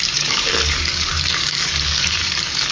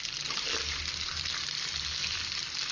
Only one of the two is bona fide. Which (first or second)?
second